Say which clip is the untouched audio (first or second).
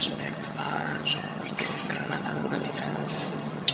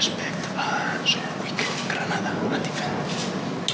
second